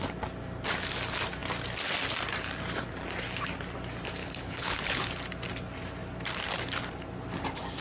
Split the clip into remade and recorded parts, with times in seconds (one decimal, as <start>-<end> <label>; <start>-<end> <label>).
0.0-4.2 recorded; 4.2-5.1 remade; 5.1-7.8 recorded